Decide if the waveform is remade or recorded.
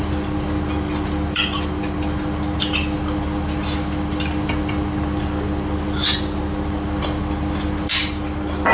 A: recorded